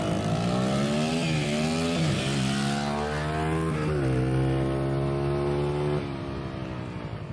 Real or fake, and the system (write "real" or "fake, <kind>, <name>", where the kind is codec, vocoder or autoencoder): real